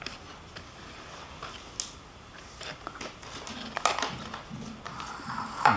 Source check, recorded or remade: recorded